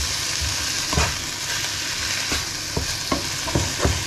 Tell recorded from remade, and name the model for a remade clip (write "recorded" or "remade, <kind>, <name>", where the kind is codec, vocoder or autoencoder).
recorded